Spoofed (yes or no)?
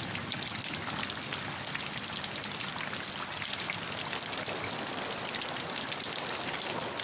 no